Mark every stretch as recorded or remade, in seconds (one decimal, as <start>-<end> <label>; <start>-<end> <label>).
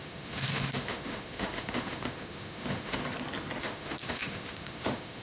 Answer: 0.0-3.0 remade; 3.0-3.6 recorded; 3.6-5.2 remade